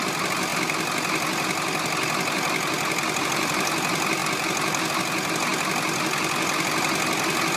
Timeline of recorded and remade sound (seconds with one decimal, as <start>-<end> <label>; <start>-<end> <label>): 0.0-7.6 recorded